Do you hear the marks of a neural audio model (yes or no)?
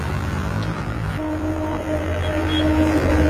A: yes